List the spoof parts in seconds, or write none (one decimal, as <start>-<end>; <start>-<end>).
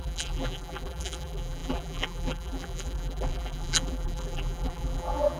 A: 0.0-5.4